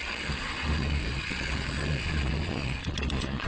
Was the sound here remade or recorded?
remade